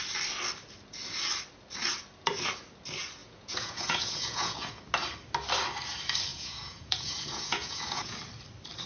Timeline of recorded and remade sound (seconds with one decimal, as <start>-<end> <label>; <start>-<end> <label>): 0.0-3.2 recorded; 3.2-4.7 remade; 4.7-6.3 recorded; 6.3-8.2 remade; 8.2-8.9 recorded